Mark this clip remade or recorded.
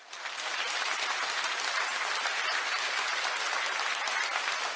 recorded